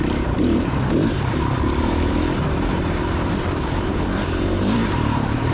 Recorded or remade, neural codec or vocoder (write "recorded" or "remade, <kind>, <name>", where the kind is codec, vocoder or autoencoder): remade, vocoder, BigVGAN v2